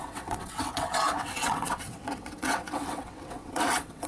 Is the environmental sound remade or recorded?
remade